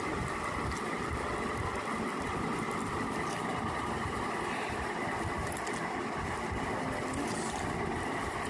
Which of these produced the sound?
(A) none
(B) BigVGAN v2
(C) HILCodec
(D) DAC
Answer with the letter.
A